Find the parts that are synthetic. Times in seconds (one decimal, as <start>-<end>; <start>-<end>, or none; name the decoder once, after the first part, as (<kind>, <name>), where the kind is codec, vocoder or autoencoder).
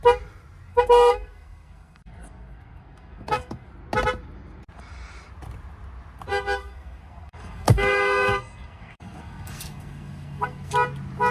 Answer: 0.7-3.7 (codec, SNAC); 6.3-10.7